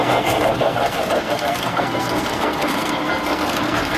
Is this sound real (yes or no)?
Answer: no